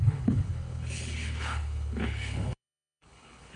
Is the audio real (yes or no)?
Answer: no